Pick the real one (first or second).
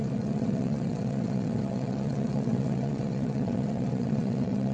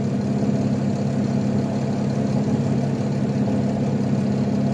second